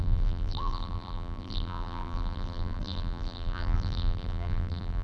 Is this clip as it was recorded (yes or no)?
no